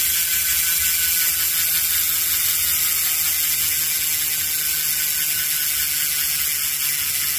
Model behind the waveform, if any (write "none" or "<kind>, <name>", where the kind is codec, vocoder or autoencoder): none